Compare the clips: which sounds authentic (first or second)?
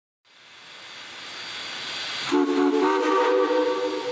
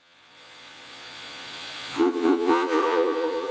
first